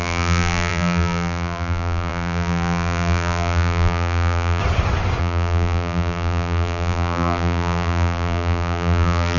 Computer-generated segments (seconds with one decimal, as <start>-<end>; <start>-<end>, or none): 0.0-4.6; 5.2-9.4